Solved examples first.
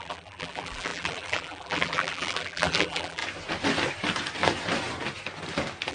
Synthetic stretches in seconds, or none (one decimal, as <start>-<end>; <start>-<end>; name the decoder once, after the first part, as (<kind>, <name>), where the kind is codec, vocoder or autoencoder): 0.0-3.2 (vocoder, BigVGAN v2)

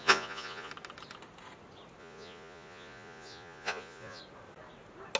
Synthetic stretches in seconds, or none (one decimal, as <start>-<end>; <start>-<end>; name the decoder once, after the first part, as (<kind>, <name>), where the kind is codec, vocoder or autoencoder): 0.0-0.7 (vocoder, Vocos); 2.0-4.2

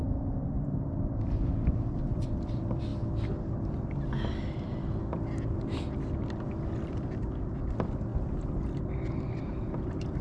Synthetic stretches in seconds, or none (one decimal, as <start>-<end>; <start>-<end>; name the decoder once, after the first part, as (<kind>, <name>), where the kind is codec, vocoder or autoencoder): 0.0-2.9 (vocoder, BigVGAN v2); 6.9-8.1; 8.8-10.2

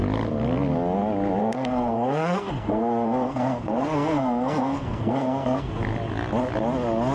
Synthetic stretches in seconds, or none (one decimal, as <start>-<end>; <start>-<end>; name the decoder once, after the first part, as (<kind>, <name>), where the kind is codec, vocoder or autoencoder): 1.4-5.7 (codec, SNAC)

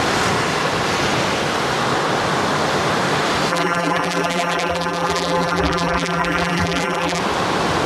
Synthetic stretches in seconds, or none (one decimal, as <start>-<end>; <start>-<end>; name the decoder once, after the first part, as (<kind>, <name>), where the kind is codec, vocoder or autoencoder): 3.5-7.2 (vocoder, BigVGAN v2)